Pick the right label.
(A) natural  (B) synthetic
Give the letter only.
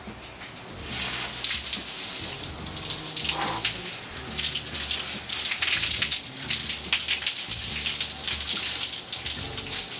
A